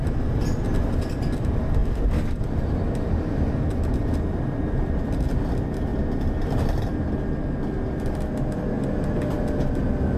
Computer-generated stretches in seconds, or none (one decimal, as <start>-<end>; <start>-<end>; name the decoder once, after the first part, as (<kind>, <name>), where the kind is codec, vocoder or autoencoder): none